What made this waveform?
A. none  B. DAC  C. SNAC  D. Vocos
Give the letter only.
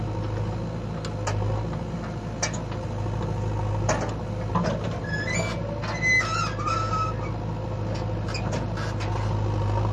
A